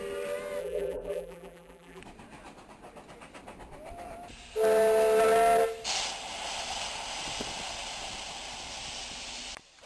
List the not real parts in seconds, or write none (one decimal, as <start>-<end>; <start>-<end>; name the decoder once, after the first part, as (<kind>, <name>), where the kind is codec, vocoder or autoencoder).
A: 0.6-2.0 (vocoder, BigVGAN v2)